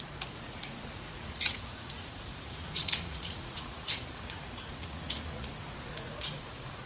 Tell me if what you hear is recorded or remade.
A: remade